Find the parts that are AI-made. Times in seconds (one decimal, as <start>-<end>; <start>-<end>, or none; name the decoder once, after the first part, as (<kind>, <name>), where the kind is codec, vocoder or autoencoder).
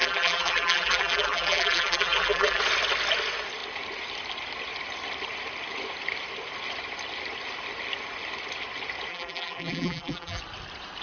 0.0-2.6 (vocoder, BigVGAN v2); 9.1-10.4